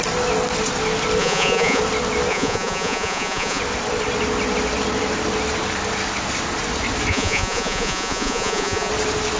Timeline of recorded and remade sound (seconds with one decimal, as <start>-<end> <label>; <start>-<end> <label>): 0.0-1.2 recorded; 1.2-1.8 remade; 1.8-2.3 recorded; 2.3-3.6 remade; 3.6-7.1 recorded; 7.1-8.9 remade; 8.9-9.4 recorded